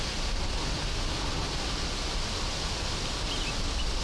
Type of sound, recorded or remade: recorded